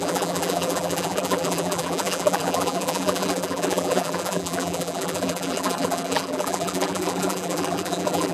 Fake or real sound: fake